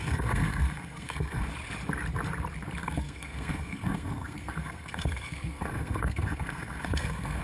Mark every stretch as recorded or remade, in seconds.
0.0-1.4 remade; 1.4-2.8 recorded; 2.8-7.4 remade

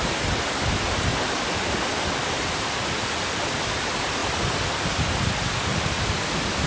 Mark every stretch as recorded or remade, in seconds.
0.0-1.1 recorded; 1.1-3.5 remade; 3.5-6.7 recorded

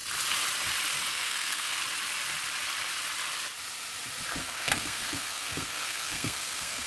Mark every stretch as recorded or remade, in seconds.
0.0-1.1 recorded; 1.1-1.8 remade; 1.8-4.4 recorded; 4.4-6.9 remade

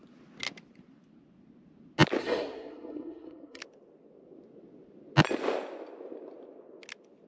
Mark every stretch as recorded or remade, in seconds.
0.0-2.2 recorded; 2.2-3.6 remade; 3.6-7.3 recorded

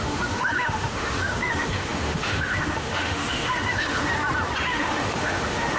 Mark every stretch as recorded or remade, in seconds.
0.0-4.1 remade; 4.1-4.7 recorded; 4.7-5.8 remade

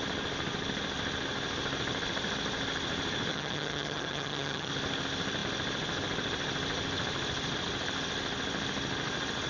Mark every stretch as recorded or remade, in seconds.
0.0-3.3 recorded; 3.3-4.7 remade; 4.7-9.5 recorded

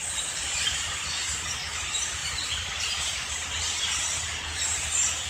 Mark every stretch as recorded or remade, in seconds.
0.0-2.2 recorded; 2.2-4.6 remade; 4.6-5.3 recorded

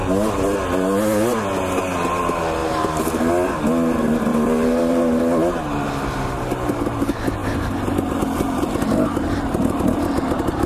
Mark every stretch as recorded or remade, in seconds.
0.0-4.3 recorded; 4.3-5.0 remade; 5.0-7.4 recorded; 7.4-9.4 remade; 9.4-10.7 recorded